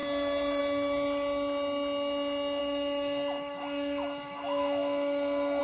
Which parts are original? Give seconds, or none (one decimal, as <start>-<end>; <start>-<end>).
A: 0.0-2.6